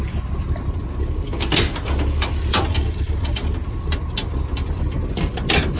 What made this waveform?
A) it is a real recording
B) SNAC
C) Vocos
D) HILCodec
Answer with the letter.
A